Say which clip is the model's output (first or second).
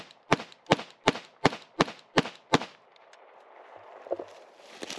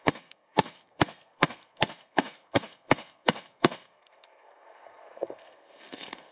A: second